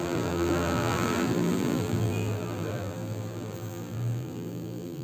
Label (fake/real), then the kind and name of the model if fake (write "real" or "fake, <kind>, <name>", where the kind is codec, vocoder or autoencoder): fake, vocoder, BigVGAN v2